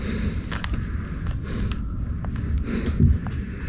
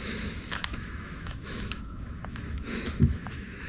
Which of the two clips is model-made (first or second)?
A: second